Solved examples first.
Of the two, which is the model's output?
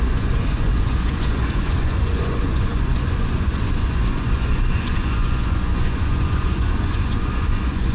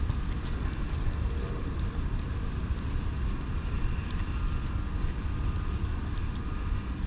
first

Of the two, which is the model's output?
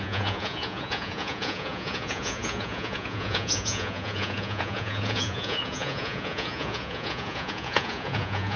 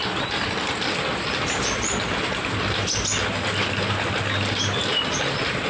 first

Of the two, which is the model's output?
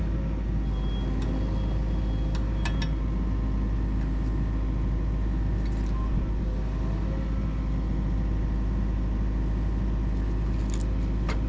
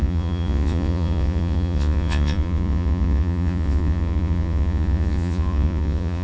second